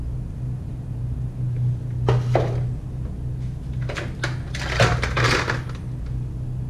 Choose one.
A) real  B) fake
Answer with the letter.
A